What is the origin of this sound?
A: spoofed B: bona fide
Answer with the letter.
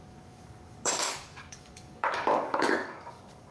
A